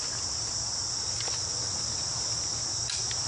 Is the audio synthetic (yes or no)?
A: no